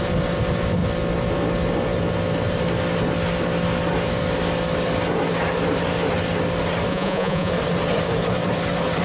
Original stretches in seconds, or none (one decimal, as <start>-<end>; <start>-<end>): 0.0-6.9; 7.5-9.0